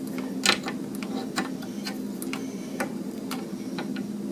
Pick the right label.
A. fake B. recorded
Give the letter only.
B